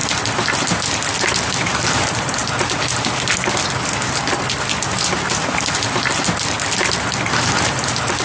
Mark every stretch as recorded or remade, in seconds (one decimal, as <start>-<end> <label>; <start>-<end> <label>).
0.0-1.5 recorded; 1.5-2.4 remade; 2.4-7.3 recorded; 7.3-8.2 remade